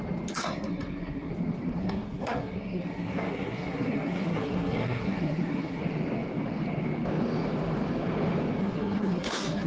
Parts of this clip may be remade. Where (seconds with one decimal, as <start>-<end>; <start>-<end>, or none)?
0.4-1.3; 1.8-5.8; 8.6-9.7